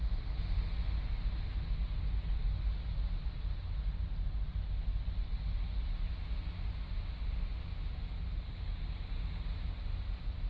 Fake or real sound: real